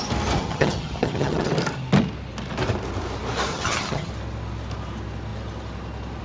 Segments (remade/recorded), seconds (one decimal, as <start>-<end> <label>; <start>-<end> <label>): 0.0-0.4 recorded; 0.4-1.5 remade; 1.5-3.5 recorded; 3.5-4.1 remade; 4.1-6.2 recorded